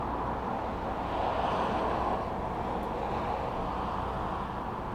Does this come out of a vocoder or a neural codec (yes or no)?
no